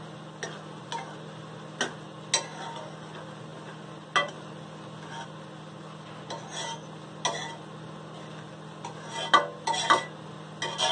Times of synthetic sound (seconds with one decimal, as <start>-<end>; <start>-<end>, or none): none